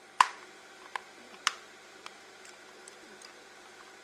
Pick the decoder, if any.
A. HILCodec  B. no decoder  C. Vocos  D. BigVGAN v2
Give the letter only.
D